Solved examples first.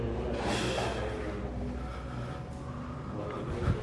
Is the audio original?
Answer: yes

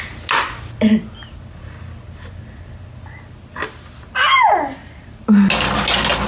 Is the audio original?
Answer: yes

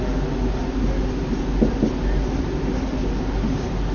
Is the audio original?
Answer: yes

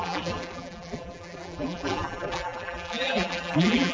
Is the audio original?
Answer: no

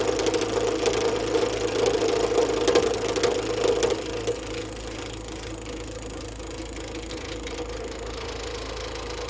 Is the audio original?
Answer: yes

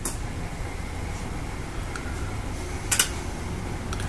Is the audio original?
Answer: yes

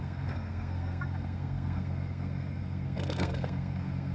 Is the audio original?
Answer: no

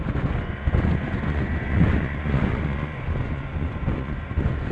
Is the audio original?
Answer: no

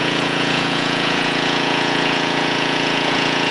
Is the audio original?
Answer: no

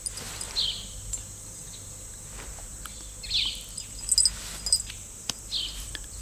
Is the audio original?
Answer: yes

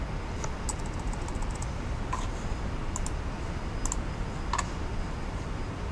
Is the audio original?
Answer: yes